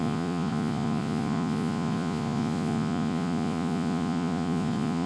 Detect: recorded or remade remade